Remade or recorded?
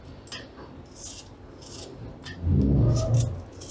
recorded